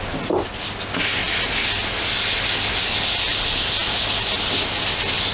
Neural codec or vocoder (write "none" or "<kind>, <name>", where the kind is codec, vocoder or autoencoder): none